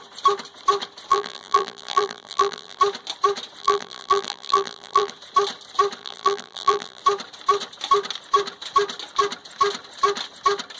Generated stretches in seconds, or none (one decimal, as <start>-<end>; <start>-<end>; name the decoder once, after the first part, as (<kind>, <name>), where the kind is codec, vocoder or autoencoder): 1.1-2.8 (vocoder, BigVGAN v2); 3.6-5.1; 6.0-7.0